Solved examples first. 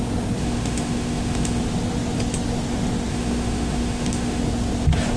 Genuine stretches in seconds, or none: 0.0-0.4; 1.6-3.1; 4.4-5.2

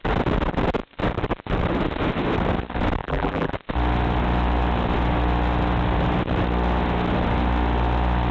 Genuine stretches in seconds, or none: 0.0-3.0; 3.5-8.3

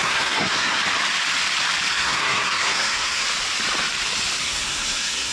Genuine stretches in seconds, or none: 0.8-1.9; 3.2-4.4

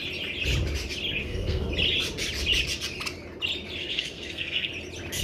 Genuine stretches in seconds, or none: 0.0-1.2; 1.7-3.8; 4.7-5.2

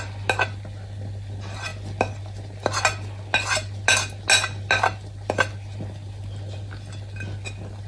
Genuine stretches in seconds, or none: 0.0-7.9

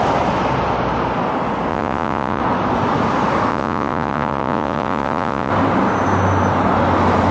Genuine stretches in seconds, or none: 0.0-1.7; 2.4-3.5; 5.5-7.3

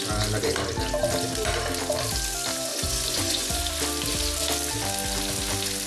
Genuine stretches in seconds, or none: 0.0-2.7; 3.6-5.9

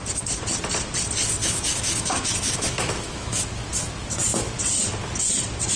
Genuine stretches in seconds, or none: 0.0-1.4; 3.4-5.8